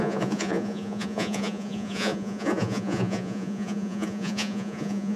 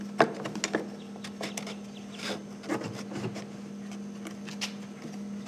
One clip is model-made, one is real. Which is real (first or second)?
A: second